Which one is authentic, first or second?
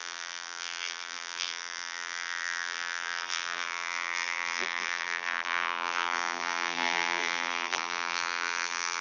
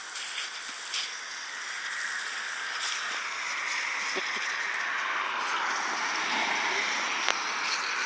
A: second